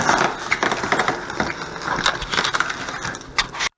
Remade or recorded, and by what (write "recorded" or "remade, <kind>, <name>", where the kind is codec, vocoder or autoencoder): recorded